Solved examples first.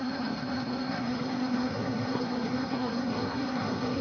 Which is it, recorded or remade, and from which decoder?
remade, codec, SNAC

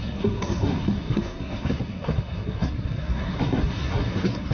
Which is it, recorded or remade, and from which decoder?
remade, codec, SNAC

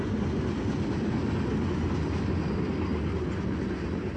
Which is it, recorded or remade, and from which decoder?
recorded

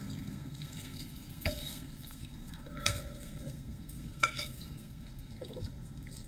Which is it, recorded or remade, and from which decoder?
remade, codec, SNAC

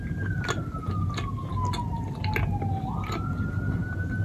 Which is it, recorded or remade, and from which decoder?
recorded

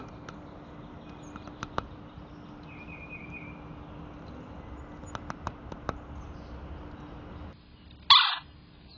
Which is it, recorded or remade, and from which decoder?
recorded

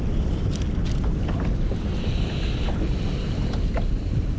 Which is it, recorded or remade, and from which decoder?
recorded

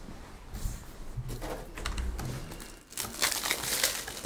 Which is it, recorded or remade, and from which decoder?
recorded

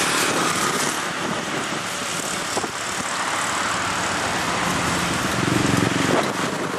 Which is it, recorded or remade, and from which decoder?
recorded